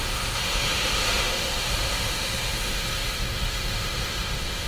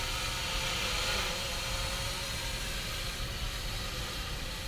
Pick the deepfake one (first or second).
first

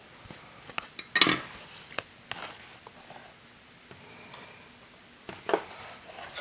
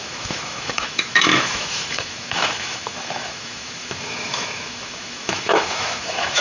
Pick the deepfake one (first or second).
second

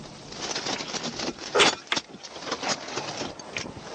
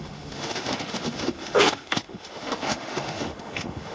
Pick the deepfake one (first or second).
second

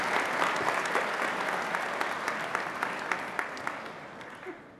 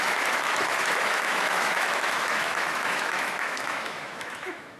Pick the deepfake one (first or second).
second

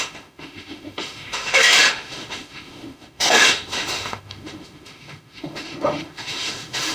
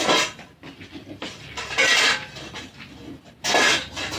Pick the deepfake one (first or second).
first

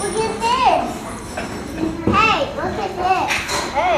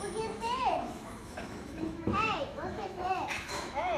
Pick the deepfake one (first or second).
second